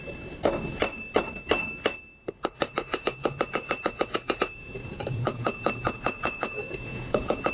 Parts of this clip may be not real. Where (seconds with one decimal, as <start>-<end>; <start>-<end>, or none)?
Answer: 2.7-7.5